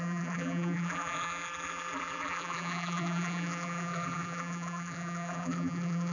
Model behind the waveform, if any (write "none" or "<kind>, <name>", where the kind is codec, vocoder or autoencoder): vocoder, BigVGAN v2